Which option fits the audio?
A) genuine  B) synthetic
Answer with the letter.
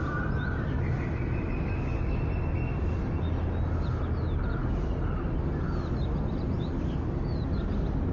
A